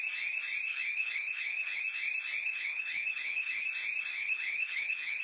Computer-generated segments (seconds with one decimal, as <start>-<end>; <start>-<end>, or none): 0.7-1.8; 2.4-3.6; 4.1-5.2